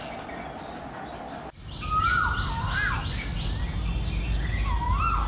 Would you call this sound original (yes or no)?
yes